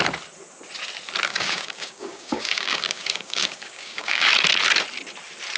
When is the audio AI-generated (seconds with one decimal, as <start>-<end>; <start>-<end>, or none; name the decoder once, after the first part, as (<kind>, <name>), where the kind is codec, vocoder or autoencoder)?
1.3-4.3 (codec, DAC)

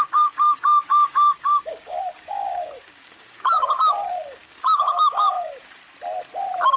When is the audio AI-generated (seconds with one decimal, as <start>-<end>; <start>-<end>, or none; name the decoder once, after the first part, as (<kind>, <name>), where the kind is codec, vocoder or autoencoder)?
0.0-5.8 (codec, DAC)